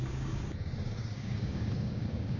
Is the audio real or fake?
fake